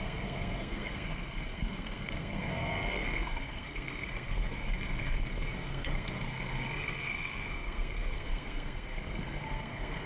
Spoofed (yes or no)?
yes